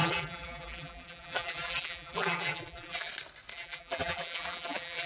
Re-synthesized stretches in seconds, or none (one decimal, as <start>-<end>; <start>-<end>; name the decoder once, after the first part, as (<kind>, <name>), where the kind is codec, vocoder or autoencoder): 0.0-3.1 (vocoder, BigVGAN v2); 3.5-5.1